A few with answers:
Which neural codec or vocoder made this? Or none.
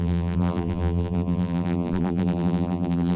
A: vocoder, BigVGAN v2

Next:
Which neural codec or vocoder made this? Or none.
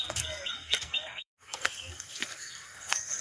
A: codec, SNAC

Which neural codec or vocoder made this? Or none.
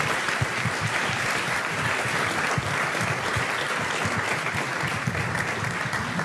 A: none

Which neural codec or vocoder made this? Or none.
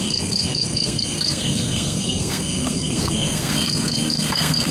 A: codec, SNAC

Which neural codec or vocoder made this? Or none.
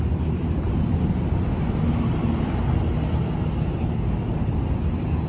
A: none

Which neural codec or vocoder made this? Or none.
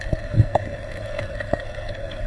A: codec, SNAC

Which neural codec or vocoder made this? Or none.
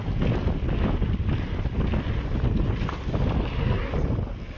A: none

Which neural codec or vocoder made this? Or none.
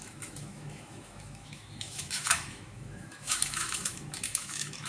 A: autoencoder, DAC-VAE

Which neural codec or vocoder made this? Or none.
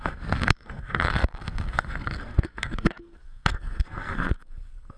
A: codec, SNAC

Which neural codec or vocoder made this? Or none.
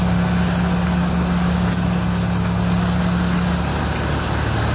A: none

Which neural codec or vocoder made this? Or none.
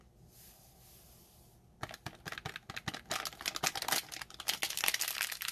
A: none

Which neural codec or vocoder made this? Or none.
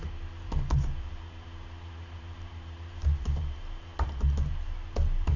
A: vocoder, BigVGAN v2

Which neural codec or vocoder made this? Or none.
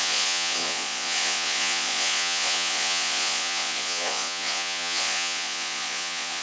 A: vocoder, Vocos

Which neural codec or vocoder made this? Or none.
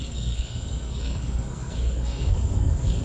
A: codec, SNAC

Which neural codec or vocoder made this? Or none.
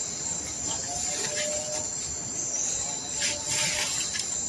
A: none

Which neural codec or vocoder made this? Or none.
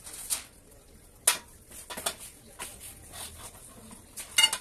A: none